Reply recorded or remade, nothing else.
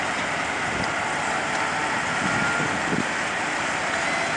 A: recorded